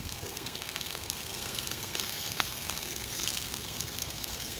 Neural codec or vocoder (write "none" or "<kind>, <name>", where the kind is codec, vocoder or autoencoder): codec, SNAC